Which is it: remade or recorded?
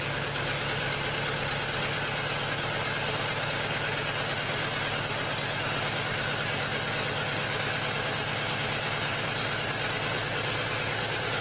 recorded